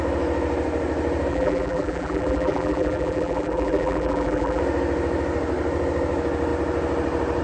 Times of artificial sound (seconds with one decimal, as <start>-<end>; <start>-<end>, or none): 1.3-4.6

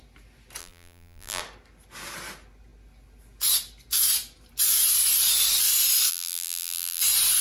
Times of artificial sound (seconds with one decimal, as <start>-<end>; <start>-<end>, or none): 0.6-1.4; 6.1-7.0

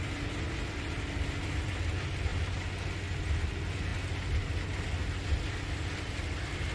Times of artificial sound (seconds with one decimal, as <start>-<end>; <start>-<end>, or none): none

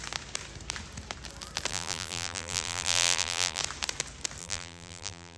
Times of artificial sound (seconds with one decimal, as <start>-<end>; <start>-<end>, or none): 1.7-3.6; 4.4-5.4

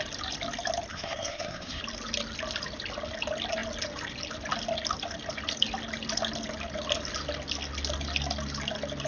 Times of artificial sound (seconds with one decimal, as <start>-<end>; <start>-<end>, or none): 0.9-1.8